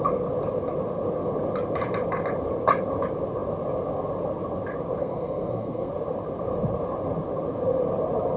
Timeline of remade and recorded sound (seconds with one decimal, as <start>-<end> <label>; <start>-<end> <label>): 0.0-5.0 recorded; 5.0-5.9 remade; 5.9-8.4 recorded